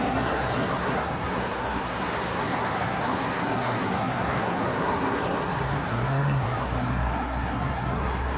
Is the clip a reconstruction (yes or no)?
yes